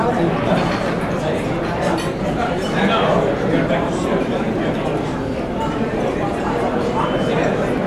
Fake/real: fake